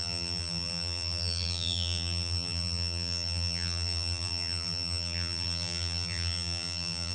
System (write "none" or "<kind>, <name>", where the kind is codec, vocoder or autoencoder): vocoder, BigVGAN v2